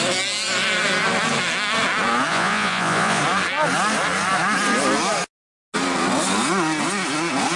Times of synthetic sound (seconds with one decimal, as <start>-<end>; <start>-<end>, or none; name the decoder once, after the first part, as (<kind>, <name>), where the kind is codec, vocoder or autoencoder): 2.3-3.2 (vocoder, Vocos)